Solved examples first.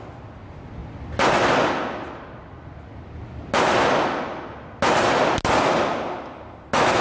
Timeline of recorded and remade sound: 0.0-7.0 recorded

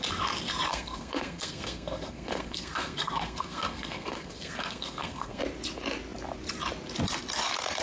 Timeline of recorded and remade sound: 0.0-0.7 recorded; 0.7-5.4 remade; 5.4-7.8 recorded

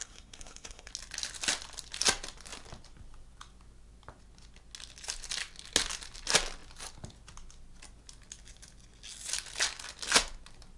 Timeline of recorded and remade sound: 0.0-0.9 remade; 0.9-10.8 recorded

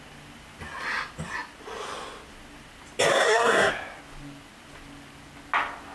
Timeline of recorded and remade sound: 0.0-3.1 recorded; 3.1-3.7 remade; 3.7-5.9 recorded

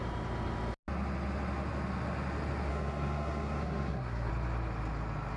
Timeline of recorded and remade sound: 0.0-2.7 recorded; 2.7-4.3 remade; 4.3-5.4 recorded

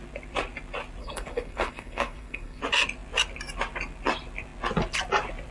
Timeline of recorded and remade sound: 0.0-1.0 recorded; 1.0-2.6 remade; 2.6-5.5 recorded

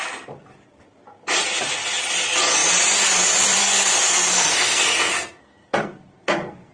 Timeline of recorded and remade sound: 0.0-3.6 recorded; 3.6-6.7 remade

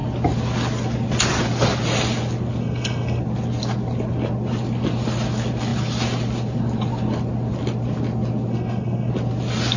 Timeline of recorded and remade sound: 0.0-2.6 recorded; 2.6-3.2 remade; 3.2-8.5 recorded; 8.5-9.1 remade; 9.1-9.8 recorded